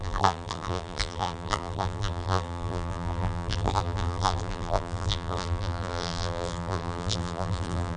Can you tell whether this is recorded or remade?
remade